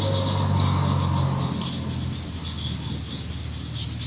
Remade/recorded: recorded